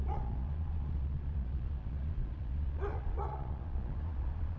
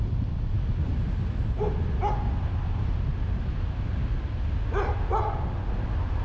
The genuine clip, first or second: second